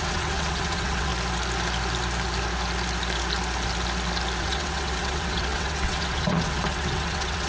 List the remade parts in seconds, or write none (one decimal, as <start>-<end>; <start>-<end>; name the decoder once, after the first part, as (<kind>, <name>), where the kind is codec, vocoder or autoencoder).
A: 0.0-1.1 (vocoder, WaveNeXt); 4.4-7.5